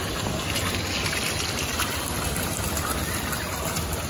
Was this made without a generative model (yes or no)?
yes